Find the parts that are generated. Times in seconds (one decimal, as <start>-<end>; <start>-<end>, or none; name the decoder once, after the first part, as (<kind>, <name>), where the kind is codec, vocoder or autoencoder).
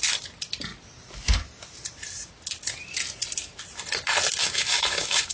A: 4.4-5.3 (autoencoder, DAC-VAE)